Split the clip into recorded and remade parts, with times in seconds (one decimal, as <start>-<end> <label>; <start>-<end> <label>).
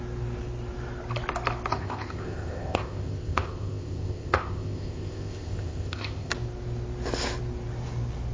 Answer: 0.0-1.7 recorded; 1.7-6.3 remade; 6.3-8.3 recorded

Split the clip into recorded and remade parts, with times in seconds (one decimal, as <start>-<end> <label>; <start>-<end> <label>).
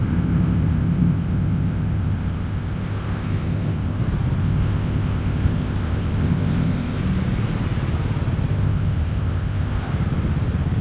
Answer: 0.0-4.0 remade; 4.0-4.4 recorded; 4.4-7.0 remade; 7.0-8.5 recorded; 8.5-9.9 remade; 9.9-10.8 recorded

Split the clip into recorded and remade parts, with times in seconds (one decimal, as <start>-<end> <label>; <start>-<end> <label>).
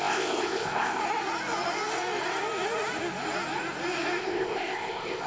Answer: 0.0-1.0 remade; 1.0-4.2 recorded; 4.2-5.3 remade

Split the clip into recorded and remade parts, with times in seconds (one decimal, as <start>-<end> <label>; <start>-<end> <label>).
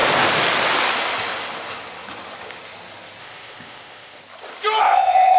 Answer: 0.0-3.2 recorded; 3.2-4.2 remade; 4.2-4.8 recorded; 4.8-5.4 remade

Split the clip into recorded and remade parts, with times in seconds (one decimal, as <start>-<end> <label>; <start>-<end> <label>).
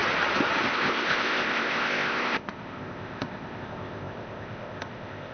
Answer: 0.0-0.7 recorded; 0.7-5.3 remade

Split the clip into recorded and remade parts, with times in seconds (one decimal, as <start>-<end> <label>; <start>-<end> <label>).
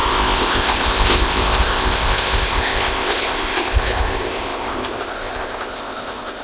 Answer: 0.0-6.4 remade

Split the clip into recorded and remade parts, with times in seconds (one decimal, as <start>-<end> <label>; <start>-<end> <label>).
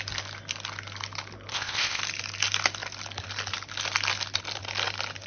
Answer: 0.0-1.5 recorded; 1.5-2.0 remade; 2.0-5.3 recorded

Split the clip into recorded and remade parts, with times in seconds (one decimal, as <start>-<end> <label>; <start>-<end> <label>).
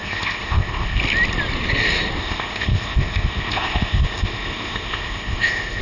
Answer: 0.0-1.0 remade; 1.0-2.2 recorded; 2.2-5.8 remade